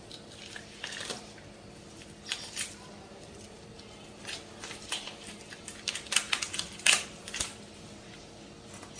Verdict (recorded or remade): recorded